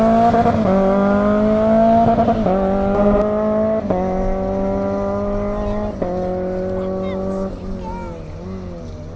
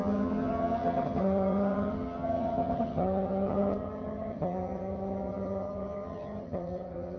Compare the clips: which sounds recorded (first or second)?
first